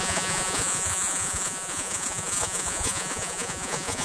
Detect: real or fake fake